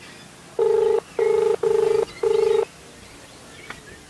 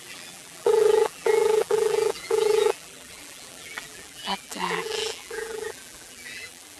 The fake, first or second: second